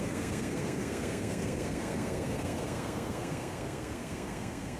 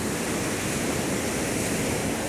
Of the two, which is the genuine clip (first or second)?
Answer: second